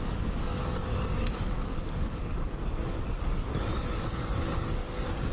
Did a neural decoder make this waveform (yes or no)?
yes